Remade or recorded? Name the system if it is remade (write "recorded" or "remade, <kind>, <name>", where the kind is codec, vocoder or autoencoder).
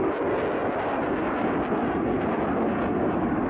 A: recorded